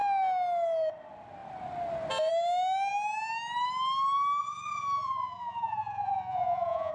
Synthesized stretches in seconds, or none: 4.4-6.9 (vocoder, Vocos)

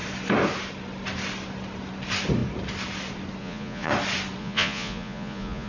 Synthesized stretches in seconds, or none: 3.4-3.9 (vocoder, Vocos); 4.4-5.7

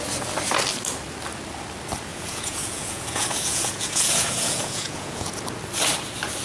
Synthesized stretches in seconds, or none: 2.1-5.4 (vocoder, Vocos)